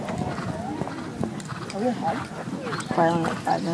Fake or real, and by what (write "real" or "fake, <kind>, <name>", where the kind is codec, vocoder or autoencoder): real